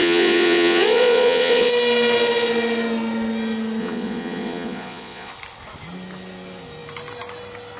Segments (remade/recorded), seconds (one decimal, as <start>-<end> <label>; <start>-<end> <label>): 0.0-1.7 remade; 1.7-3.8 recorded; 3.8-5.3 remade; 5.3-7.8 recorded